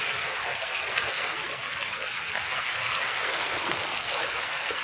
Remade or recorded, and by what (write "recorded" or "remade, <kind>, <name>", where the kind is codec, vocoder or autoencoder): remade, codec, SNAC